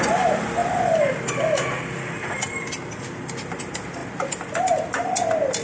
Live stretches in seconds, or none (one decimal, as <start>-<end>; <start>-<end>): 0.0-0.6; 3.6-5.6